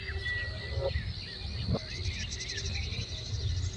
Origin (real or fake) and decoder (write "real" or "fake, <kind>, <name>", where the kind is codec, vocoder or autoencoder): real